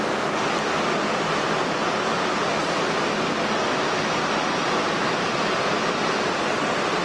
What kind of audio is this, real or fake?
real